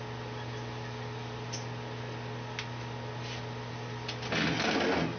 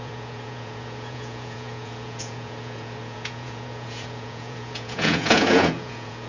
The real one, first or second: first